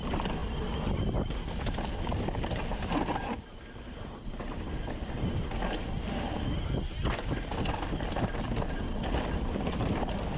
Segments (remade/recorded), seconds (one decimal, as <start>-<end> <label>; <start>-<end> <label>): 0.0-10.4 recorded